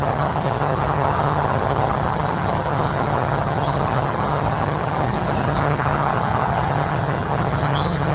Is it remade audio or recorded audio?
remade